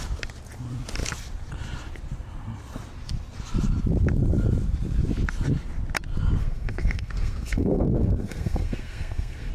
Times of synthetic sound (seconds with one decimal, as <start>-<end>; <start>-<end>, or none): 6.4-9.5